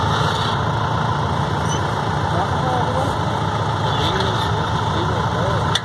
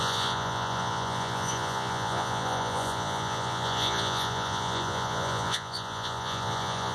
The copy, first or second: second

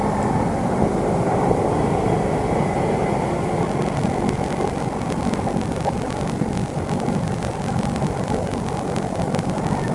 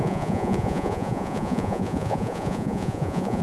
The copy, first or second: second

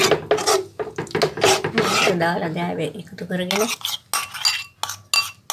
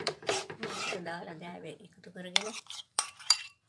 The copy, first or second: second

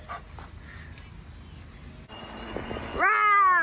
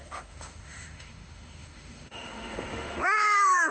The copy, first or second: second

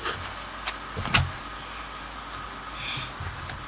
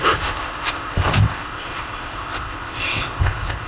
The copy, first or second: second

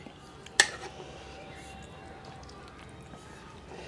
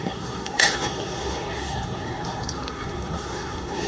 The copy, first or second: second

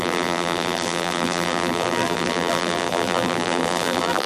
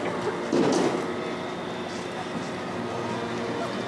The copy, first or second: first